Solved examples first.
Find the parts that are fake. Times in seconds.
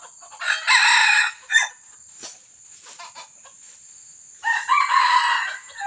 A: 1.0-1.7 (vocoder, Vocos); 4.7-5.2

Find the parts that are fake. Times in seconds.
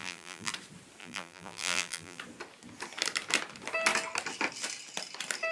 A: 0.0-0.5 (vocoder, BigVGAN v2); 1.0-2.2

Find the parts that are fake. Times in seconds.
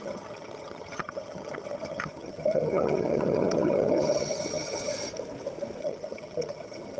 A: 0.0-4.9 (vocoder, HiFi-GAN); 5.8-7.0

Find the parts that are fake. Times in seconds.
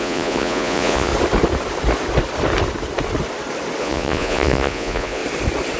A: 0.0-1.1 (vocoder, Vocos); 3.8-5.2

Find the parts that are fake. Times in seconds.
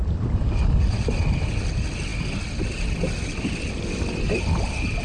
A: none